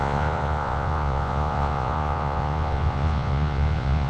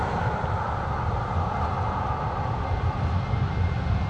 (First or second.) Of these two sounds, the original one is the second